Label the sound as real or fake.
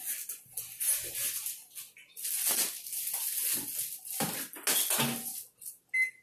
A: real